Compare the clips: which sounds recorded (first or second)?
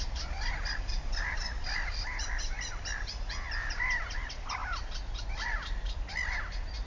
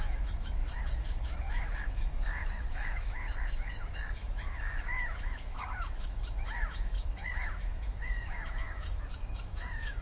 first